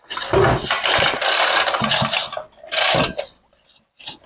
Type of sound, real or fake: real